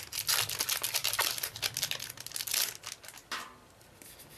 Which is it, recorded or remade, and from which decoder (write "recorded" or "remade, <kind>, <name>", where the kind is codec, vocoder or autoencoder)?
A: recorded